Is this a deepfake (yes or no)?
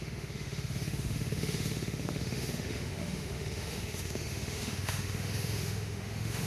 yes